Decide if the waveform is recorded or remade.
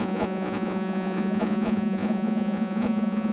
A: remade